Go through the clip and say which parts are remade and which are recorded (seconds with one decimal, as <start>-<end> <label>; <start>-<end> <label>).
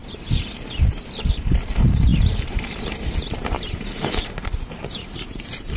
0.0-1.3 recorded; 1.3-5.8 remade